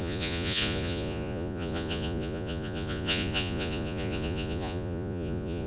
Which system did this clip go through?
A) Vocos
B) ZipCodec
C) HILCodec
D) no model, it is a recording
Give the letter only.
A